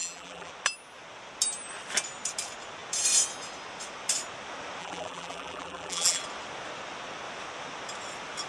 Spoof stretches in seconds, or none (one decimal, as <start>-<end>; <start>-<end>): 0.0-0.5; 4.8-6.2